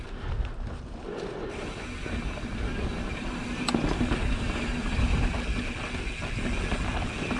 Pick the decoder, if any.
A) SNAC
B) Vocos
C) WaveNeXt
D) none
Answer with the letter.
D